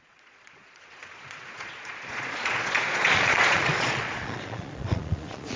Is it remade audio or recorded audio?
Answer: remade